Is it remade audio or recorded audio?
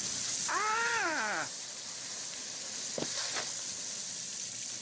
recorded